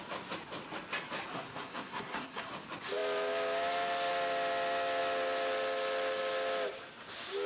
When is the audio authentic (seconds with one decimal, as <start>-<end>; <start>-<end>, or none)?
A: 0.0-1.3; 2.5-7.5